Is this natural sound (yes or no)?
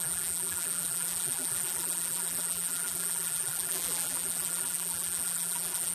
no